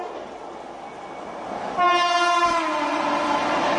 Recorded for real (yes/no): yes